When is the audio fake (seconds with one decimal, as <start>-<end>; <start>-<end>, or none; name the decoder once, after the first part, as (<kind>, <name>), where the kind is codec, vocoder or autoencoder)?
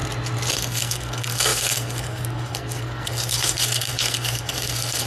0.5-5.1 (codec, SNAC)